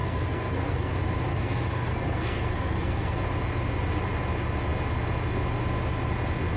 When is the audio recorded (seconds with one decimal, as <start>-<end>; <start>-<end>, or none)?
0.9-1.3; 3.2-6.6